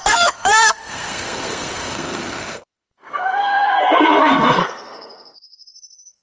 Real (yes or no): no